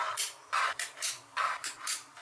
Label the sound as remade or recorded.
recorded